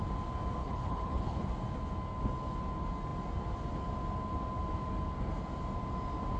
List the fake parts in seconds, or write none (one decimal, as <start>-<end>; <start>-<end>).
0.6-1.5